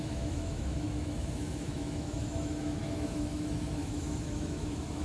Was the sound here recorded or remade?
remade